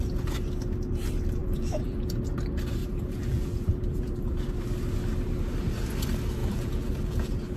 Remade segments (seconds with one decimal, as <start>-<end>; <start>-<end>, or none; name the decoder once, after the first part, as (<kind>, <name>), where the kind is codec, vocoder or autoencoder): 1.4-2.2 (vocoder, BigVGAN v2); 2.8-4.5; 6.4-7.6